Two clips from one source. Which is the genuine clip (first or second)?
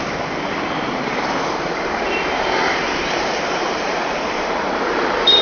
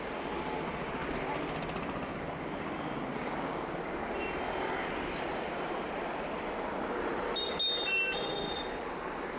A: second